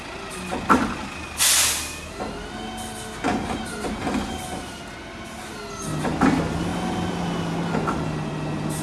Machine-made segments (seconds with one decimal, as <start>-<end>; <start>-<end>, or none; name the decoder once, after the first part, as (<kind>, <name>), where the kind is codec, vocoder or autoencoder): none